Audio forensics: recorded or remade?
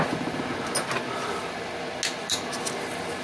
recorded